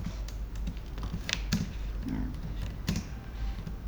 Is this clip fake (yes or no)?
no